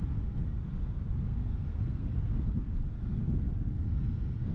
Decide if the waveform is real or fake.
fake